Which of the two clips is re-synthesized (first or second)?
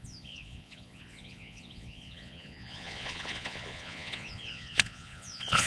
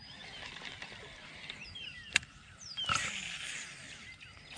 first